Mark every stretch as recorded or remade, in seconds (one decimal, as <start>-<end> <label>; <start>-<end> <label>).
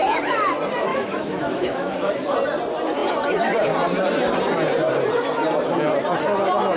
0.0-0.9 recorded; 0.9-2.1 remade; 2.1-6.8 recorded